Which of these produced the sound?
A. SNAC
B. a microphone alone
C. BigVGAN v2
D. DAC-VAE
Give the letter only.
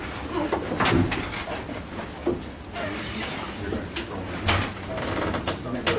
B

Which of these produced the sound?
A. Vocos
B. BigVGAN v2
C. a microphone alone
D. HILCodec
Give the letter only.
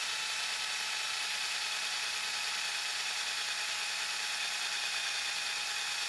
C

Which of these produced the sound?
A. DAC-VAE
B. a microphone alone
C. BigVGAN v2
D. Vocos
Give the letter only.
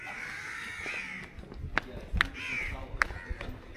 B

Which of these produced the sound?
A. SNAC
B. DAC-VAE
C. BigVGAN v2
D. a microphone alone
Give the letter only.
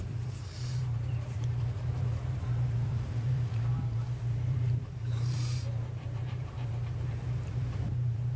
C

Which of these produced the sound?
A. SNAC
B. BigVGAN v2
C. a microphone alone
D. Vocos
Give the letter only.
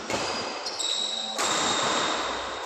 B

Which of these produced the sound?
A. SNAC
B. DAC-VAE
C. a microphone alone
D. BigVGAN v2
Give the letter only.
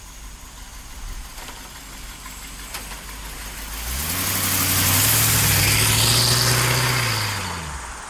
C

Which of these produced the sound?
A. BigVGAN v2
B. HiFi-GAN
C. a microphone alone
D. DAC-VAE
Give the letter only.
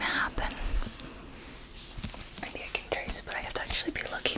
C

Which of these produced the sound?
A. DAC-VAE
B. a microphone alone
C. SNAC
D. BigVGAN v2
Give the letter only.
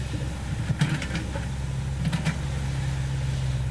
B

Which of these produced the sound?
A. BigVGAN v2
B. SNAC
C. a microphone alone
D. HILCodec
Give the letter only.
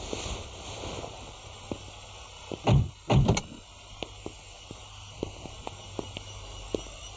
C